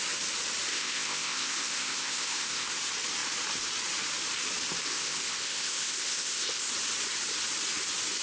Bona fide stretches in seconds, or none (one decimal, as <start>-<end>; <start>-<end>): 0.0-0.7; 2.7-4.9; 6.7-8.2